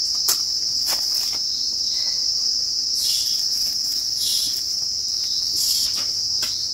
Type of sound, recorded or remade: recorded